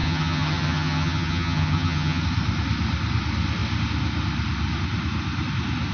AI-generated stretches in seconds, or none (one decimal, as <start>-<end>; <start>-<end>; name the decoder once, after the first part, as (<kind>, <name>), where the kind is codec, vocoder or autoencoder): 0.0-2.2 (vocoder, HiFi-GAN)